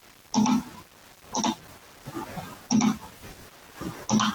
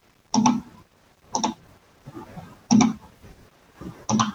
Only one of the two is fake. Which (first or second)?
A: second